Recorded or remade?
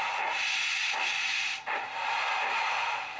recorded